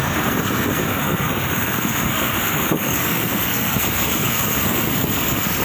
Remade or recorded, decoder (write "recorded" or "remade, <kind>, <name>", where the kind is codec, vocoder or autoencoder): remade, codec, SNAC